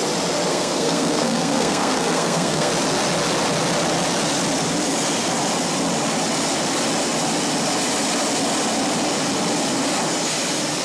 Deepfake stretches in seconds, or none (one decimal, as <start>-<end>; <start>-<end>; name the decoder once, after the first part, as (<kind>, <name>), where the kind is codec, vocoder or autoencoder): 0.5-2.7 (codec, SNAC)